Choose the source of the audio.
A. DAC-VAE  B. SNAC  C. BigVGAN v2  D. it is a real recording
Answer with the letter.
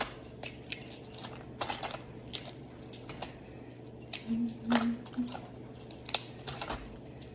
D